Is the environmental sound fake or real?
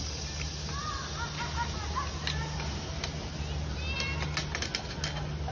real